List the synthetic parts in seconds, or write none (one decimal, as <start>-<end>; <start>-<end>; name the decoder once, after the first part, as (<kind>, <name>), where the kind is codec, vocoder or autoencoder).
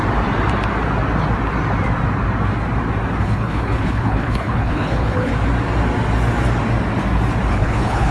3.2-5.3 (codec, HILCodec); 7.5-8.1